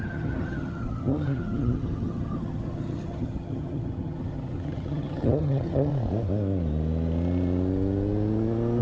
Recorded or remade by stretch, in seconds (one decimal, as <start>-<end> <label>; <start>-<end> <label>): 0.0-5.9 remade; 5.9-8.8 recorded